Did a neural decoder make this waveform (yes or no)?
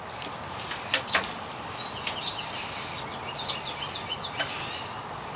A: no